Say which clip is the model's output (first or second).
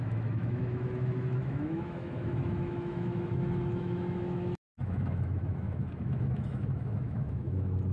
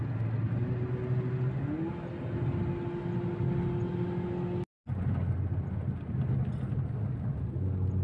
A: first